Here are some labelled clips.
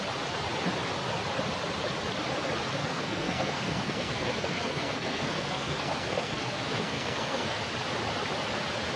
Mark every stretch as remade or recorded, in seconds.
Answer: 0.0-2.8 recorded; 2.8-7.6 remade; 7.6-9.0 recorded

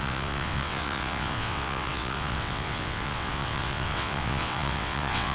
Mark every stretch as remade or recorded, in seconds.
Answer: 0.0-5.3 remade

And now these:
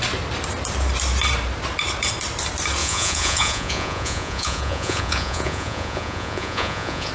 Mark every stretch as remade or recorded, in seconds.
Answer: 0.0-2.8 recorded; 2.8-7.1 remade

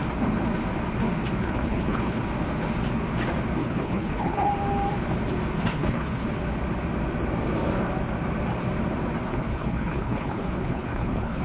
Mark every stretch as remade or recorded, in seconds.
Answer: 0.0-1.4 recorded; 1.4-2.2 remade; 2.2-3.6 recorded; 3.6-4.5 remade; 4.5-5.7 recorded; 5.7-6.3 remade; 6.3-9.3 recorded; 9.3-11.4 remade

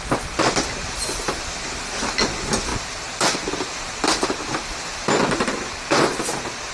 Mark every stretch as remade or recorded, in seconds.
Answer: 0.0-6.7 recorded

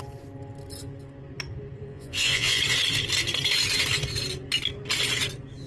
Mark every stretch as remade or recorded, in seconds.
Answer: 0.0-1.9 recorded; 1.9-2.6 remade; 2.6-5.7 recorded